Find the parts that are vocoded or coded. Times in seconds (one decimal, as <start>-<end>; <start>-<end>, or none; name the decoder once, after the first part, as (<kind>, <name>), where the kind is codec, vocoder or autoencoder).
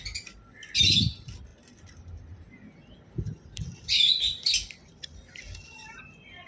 none